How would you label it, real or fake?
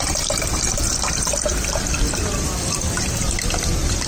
fake